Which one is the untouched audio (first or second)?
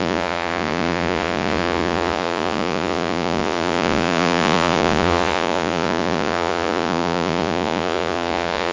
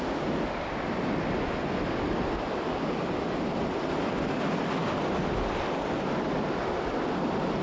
second